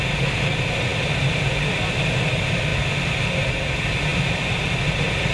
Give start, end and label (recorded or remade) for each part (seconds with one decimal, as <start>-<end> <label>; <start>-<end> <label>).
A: 0.0-0.9 recorded; 0.9-1.9 remade; 1.9-5.3 recorded